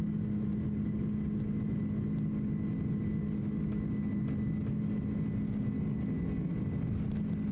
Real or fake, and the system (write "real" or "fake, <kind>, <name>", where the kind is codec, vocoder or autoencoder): real